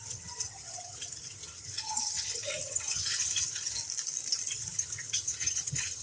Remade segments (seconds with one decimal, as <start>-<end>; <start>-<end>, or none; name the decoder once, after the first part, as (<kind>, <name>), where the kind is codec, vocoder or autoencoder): 0.0-3.8 (vocoder, HiFi-GAN); 4.5-6.0